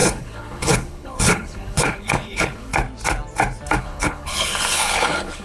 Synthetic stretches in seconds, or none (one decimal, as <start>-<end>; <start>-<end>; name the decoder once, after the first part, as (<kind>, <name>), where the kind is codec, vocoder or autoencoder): 0.0-2.7 (codec, HILCodec); 3.8-5.4